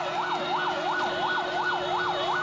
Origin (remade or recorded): recorded